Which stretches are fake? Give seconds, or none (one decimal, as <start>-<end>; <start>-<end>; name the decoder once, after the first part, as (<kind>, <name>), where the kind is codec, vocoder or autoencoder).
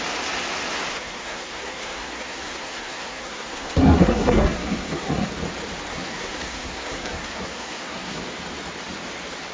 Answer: 0.9-5.3 (codec, SNAC); 5.9-8.2